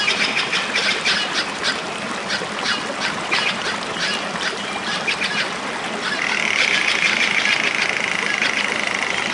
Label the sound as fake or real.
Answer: real